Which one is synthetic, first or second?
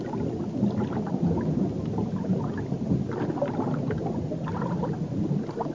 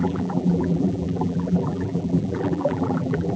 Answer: second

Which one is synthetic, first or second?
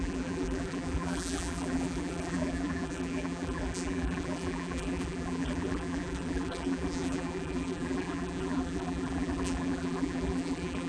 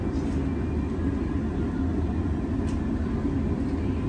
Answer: first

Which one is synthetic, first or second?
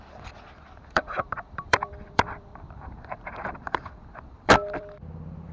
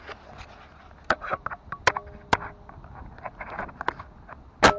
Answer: first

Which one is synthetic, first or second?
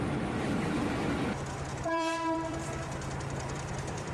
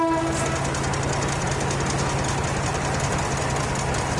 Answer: first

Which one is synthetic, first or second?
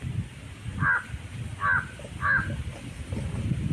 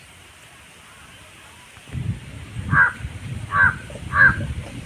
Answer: second